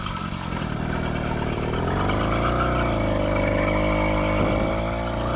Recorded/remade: recorded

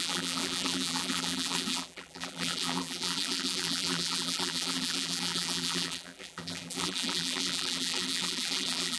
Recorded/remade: remade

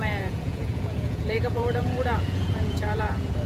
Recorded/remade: remade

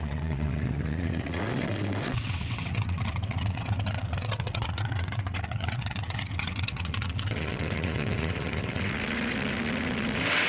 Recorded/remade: remade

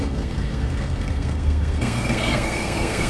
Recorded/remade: remade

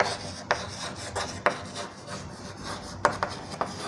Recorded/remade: recorded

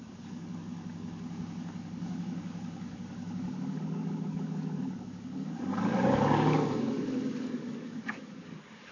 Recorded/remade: remade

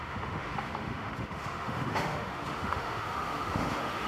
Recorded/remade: remade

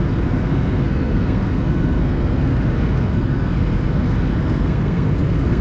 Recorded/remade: remade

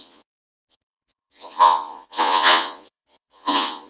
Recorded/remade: remade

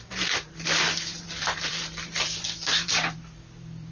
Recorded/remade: remade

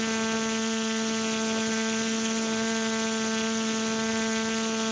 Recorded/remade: recorded